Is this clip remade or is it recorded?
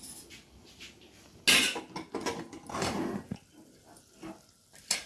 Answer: recorded